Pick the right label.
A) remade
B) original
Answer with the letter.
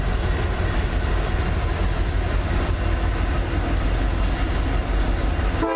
B